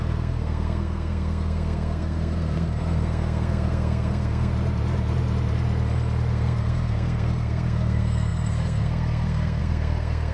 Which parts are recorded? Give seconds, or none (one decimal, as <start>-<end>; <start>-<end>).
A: 4.5-6.3

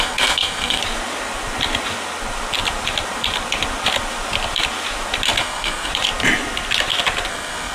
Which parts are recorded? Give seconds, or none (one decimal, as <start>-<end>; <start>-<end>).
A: 0.8-5.4; 5.9-7.3